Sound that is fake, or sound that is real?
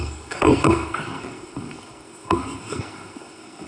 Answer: fake